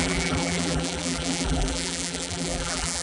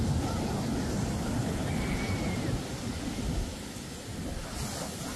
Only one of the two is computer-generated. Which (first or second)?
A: first